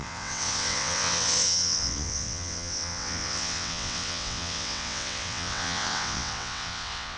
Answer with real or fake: fake